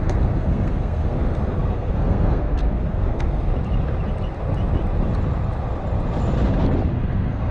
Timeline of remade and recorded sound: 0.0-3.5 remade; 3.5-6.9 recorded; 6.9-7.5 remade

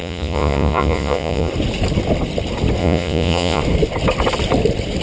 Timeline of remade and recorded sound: 0.0-1.5 remade; 1.5-2.8 recorded; 2.8-3.6 remade; 3.6-5.0 recorded

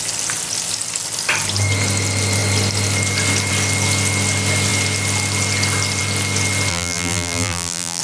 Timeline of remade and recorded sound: 0.0-6.7 recorded; 6.7-8.0 remade

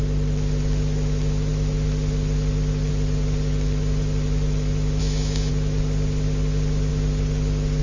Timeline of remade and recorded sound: 0.0-5.0 recorded; 5.0-5.5 remade; 5.5-7.8 recorded